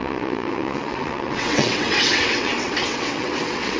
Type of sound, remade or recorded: remade